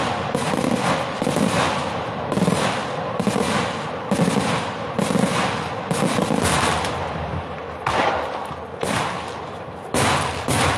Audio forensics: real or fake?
real